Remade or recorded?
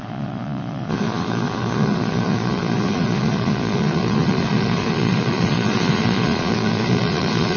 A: remade